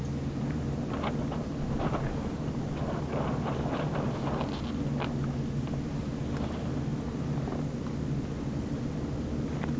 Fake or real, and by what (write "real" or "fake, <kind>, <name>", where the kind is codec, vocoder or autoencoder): real